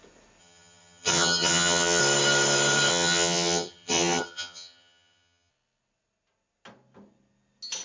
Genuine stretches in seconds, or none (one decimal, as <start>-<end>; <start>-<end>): 0.0-0.4; 2.0-2.9; 5.5-7.8